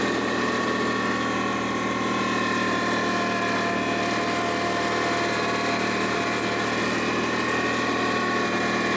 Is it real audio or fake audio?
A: real